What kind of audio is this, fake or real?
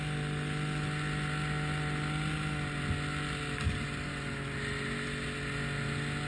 real